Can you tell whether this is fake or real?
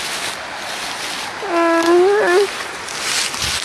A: real